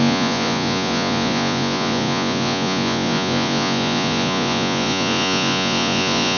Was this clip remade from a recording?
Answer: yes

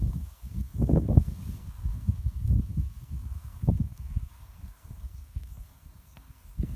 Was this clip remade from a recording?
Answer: yes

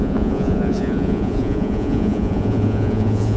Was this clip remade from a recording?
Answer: yes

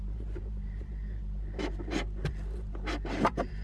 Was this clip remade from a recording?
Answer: yes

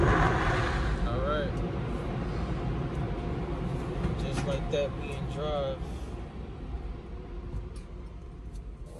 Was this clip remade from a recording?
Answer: no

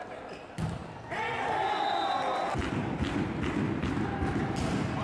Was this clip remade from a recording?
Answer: no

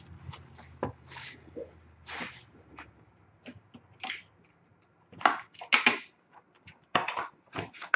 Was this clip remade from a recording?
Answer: no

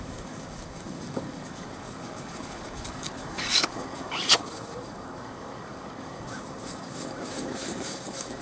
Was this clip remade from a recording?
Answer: yes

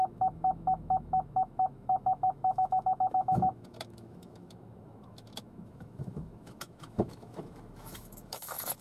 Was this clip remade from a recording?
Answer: yes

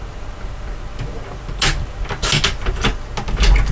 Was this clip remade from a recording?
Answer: no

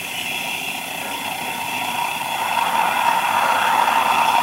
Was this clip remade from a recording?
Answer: no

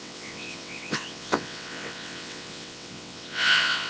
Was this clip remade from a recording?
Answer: yes